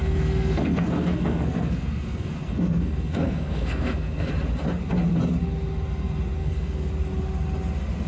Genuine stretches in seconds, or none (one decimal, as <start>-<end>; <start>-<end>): 4.3-6.4; 6.9-8.1